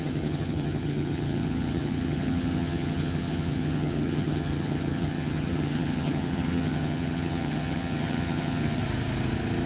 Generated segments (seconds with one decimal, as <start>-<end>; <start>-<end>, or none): 0.0-8.8